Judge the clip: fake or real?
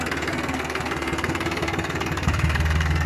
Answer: fake